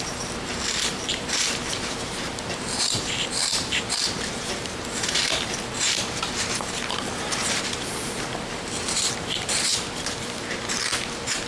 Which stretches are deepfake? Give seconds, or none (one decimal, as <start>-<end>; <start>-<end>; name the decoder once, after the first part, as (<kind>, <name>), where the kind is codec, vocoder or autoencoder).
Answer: 0.0-11.5 (vocoder, BigVGAN v2)

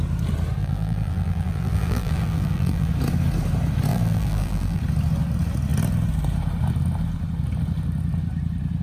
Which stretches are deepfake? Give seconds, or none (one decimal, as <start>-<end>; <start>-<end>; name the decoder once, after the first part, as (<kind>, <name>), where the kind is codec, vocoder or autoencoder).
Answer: 0.6-2.9 (vocoder, BigVGAN v2); 3.9-4.8

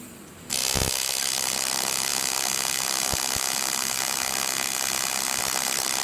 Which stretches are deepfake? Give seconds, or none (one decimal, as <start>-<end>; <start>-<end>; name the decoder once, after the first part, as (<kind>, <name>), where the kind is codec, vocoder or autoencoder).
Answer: 0.0-0.6 (vocoder, BigVGAN v2); 1.2-2.1; 5.4-6.0

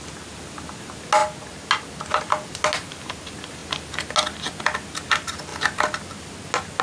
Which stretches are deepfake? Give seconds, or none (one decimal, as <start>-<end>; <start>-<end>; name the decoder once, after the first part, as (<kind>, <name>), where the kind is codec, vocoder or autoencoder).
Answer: none

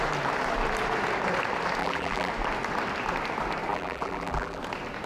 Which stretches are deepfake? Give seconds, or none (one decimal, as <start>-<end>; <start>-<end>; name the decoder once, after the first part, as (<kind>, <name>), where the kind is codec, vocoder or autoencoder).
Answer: 1.8-2.3 (vocoder, BigVGAN v2); 3.7-4.6

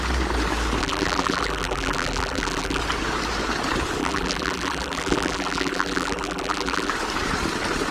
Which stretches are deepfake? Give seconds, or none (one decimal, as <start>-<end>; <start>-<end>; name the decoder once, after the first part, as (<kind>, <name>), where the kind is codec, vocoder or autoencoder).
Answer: 0.8-2.8 (vocoder, BigVGAN v2); 4.0-6.9